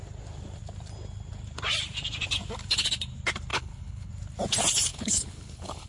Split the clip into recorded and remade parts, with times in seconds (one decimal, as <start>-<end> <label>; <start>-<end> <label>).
0.0-3.5 recorded; 3.5-4.1 remade; 4.1-4.9 recorded; 4.9-5.9 remade